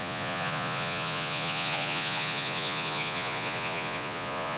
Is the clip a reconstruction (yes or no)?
yes